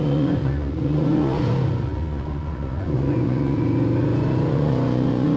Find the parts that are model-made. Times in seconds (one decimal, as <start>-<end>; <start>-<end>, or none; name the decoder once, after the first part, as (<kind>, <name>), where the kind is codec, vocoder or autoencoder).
0.0-5.4 (vocoder, Vocos)